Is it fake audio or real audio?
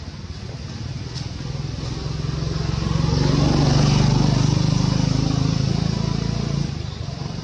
real